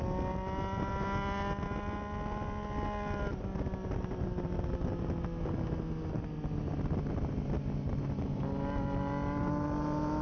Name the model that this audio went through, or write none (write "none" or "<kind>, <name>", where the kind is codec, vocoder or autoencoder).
none